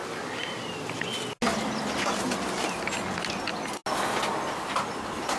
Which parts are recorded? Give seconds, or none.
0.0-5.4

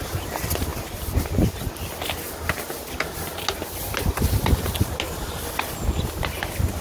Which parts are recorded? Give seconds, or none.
0.0-6.8